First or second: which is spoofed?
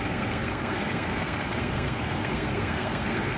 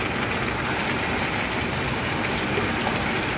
first